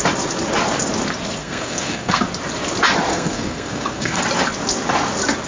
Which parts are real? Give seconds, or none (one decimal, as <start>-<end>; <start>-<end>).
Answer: 0.0-1.4; 2.2-3.1; 4.2-5.5